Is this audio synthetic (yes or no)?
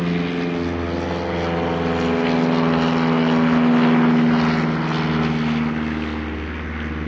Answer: no